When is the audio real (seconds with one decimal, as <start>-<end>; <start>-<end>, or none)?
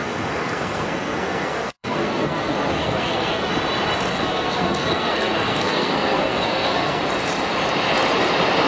3.5-4.1; 7.0-8.7